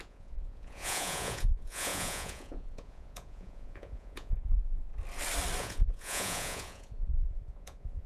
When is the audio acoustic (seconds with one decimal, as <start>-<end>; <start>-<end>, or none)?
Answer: 4.9-5.6